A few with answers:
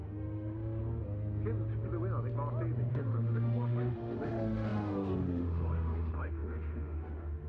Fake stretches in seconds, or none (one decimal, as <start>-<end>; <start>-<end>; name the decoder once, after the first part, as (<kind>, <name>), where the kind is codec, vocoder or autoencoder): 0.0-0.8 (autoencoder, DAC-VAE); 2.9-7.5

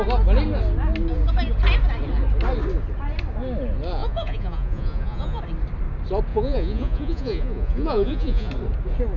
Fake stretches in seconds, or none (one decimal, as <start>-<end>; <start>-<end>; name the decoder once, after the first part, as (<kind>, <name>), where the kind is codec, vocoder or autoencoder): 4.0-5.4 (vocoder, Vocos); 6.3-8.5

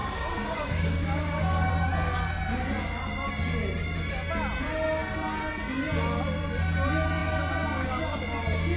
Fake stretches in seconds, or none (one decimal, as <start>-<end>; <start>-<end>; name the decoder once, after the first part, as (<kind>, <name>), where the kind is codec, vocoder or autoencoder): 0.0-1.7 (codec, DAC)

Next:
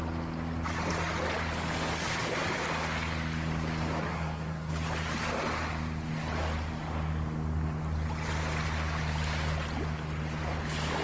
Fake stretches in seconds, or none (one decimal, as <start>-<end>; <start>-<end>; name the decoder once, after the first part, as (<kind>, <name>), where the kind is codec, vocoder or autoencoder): 4.0-4.7 (codec, SNAC)

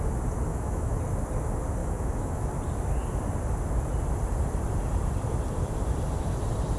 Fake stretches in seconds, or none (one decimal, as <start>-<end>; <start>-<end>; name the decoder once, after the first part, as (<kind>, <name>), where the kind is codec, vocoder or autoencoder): 0.5-1.0 (autoencoder, DAC-VAE); 1.8-2.5